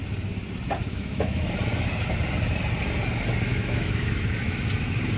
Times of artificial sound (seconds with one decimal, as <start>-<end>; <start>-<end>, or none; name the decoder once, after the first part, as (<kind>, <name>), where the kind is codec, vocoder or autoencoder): 0.8-1.5 (autoencoder, DAC-VAE); 3.5-4.6

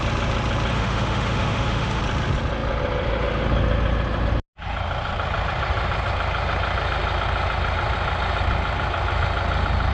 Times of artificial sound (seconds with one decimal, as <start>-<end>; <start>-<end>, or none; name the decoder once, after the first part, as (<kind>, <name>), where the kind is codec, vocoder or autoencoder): 0.7-2.0 (autoencoder, DAC-VAE)

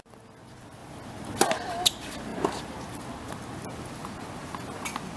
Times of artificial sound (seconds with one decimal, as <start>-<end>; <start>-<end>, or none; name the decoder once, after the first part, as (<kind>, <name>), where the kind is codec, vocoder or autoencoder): none